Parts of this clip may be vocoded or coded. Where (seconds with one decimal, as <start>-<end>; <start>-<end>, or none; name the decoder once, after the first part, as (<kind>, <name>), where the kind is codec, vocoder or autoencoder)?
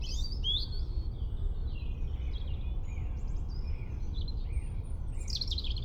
1.6-5.1 (vocoder, BigVGAN v2)